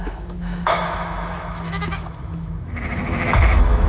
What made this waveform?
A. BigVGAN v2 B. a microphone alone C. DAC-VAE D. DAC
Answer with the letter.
C